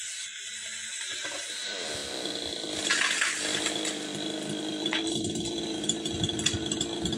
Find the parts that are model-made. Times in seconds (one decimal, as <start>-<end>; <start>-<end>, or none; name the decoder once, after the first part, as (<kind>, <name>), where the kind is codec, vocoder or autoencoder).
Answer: none